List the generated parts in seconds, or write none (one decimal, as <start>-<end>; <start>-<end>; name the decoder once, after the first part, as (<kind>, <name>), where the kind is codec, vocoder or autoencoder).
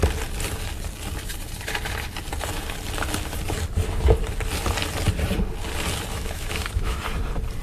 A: 6.1-7.0 (autoencoder, DAC-VAE)